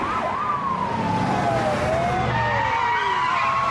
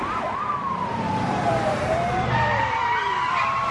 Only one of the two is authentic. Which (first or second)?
first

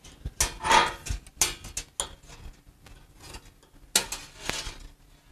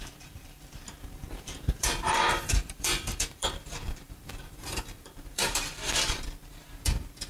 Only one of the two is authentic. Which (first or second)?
first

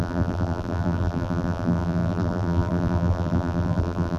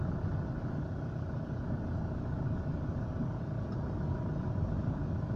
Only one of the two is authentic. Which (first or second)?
second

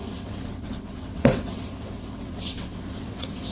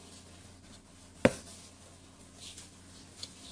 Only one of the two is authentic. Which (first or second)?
second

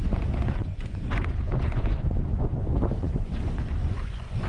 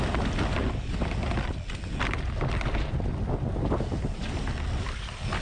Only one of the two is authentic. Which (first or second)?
second